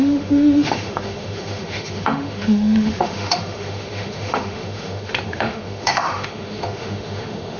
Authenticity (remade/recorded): remade